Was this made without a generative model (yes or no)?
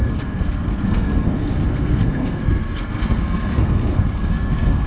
no